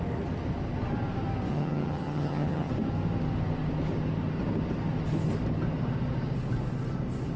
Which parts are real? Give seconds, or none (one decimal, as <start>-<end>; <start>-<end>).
0.0-1.5; 2.7-7.4